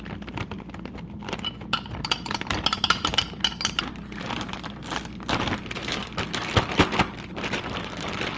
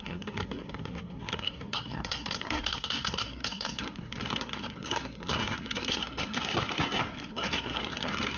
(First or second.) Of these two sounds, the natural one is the first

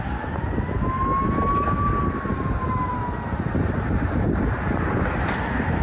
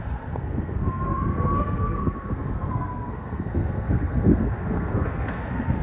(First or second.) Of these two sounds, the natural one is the first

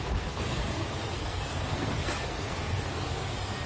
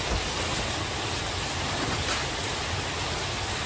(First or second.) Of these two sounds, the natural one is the second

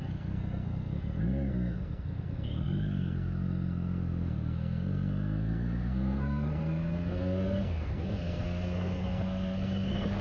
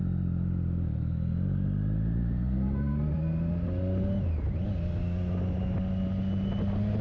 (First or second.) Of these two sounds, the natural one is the second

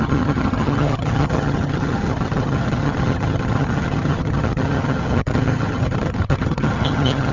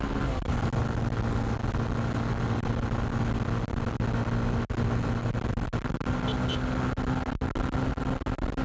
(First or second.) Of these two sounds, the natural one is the second